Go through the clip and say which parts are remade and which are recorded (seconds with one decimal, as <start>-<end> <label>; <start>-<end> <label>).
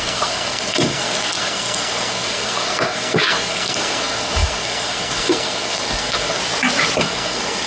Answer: 0.0-6.4 remade; 6.4-7.0 recorded; 7.0-7.7 remade